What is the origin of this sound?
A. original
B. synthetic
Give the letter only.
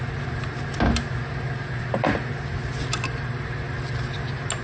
A